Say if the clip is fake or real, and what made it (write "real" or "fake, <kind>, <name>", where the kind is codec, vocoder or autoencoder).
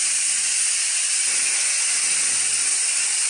real